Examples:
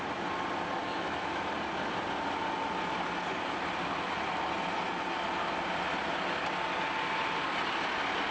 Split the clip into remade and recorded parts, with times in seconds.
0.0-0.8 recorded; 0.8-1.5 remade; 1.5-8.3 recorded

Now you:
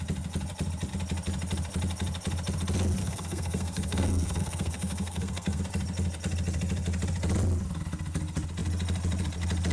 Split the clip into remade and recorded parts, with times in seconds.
0.0-3.0 recorded; 3.0-5.6 remade; 5.6-9.7 recorded

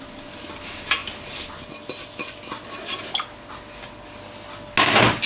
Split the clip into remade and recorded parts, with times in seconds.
0.0-5.3 recorded

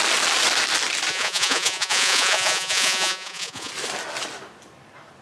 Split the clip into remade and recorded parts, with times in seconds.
0.0-1.1 recorded; 1.1-3.7 remade; 3.7-5.2 recorded

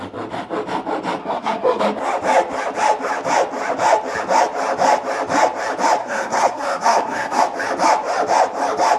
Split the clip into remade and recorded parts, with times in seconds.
0.0-1.2 recorded; 1.2-1.8 remade; 1.8-6.0 recorded; 6.0-7.4 remade; 7.4-9.0 recorded